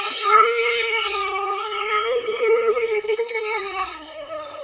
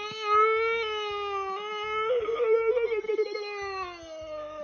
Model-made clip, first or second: first